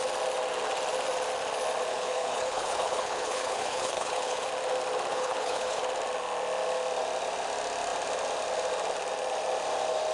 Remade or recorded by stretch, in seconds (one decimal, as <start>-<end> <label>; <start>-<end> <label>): 0.0-1.9 recorded; 1.9-4.5 remade; 4.5-5.1 recorded; 5.1-5.8 remade; 5.8-10.1 recorded